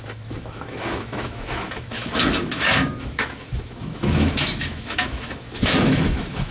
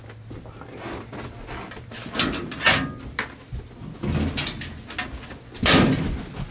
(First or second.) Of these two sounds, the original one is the second